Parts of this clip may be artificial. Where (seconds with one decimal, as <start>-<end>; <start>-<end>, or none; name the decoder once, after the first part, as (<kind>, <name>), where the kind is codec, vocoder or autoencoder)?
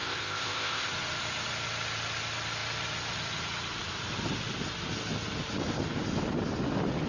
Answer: 0.0-0.9 (codec, ZipCodec)